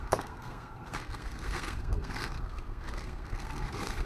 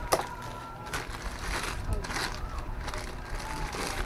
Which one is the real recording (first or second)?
second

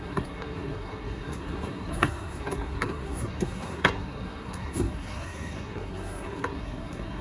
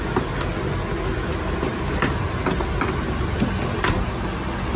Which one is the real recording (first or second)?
second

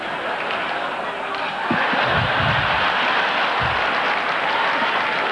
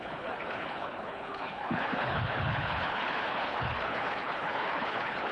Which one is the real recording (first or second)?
first